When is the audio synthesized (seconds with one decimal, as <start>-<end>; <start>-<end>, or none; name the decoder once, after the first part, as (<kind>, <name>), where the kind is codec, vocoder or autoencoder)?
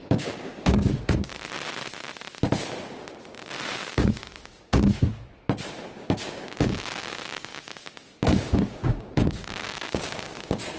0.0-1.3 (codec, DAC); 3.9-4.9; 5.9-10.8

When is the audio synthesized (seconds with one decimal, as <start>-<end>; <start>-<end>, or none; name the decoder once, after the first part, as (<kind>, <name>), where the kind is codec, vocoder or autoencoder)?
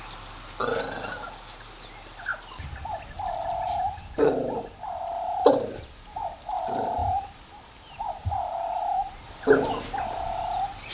none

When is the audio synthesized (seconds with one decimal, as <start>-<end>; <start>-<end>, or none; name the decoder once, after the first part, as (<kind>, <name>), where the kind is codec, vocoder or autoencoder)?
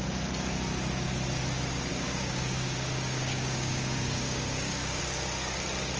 1.9-5.0 (codec, DAC)